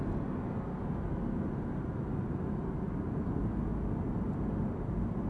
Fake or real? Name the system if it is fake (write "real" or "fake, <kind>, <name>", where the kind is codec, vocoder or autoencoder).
real